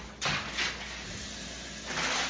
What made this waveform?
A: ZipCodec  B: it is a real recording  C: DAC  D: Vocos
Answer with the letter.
B